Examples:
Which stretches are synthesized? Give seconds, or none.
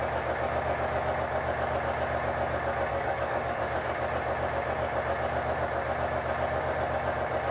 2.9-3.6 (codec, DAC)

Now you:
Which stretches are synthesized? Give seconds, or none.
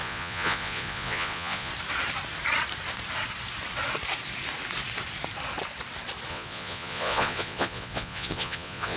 0.0-1.7 (vocoder, Vocos); 6.3-9.0